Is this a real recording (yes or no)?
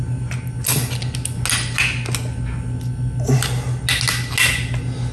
yes